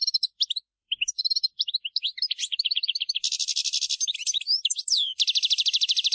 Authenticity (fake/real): fake